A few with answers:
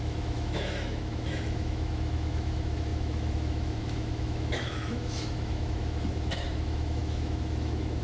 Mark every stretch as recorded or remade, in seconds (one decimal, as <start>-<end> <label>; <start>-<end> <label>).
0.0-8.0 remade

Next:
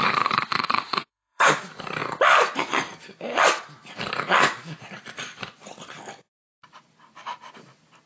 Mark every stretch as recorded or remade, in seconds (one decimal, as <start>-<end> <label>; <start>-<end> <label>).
0.0-0.5 recorded; 0.5-1.5 remade; 1.5-8.1 recorded

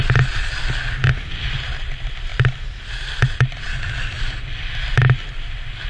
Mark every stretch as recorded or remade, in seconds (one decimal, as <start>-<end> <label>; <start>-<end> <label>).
0.0-5.9 recorded

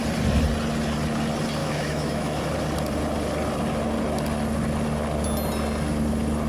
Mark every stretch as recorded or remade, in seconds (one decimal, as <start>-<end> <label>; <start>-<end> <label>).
0.0-1.6 recorded; 1.6-2.4 remade; 2.4-6.5 recorded